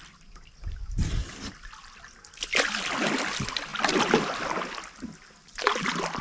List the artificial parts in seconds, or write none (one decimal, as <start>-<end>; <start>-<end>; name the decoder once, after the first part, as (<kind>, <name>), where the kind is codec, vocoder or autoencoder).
none